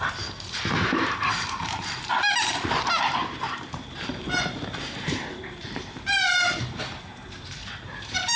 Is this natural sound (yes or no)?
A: no